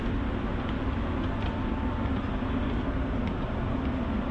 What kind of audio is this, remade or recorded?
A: recorded